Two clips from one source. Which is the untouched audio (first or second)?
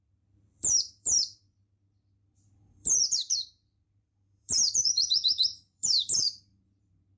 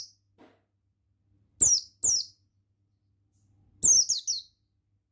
second